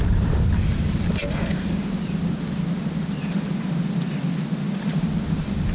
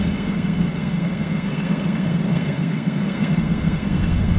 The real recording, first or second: first